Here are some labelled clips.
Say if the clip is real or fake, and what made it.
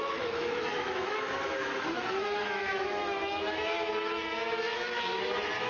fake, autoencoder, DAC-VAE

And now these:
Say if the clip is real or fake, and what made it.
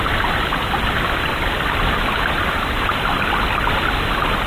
real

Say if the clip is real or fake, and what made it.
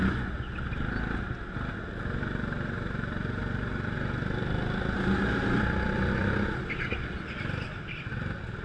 real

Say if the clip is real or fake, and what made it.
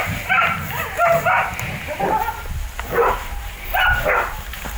fake, vocoder, BigVGAN v2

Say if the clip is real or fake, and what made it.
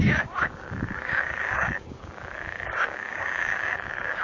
fake, codec, DAC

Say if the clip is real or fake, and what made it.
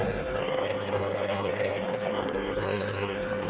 fake, codec, SNAC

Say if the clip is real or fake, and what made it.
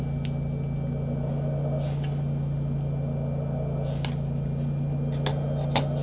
real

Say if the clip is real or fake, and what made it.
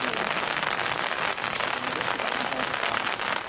real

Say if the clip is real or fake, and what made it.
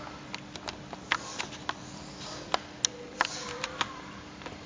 real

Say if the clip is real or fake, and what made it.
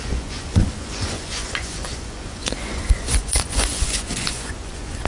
fake, vocoder, Vocos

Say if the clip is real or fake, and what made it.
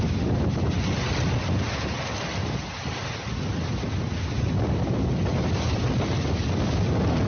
real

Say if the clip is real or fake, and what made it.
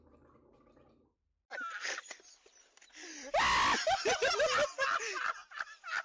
fake, vocoder, BigVGAN v2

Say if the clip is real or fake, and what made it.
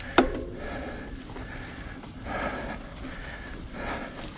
real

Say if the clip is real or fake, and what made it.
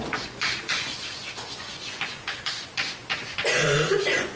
fake, vocoder, Vocos